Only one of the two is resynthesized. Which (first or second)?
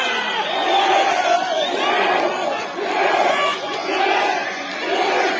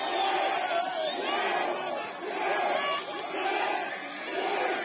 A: first